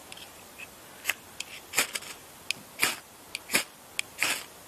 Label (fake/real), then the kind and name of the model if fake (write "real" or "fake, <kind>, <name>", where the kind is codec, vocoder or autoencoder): real